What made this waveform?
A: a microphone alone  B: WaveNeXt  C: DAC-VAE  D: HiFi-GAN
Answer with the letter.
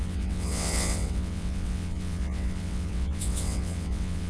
B